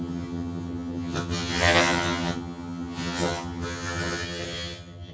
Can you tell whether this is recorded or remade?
remade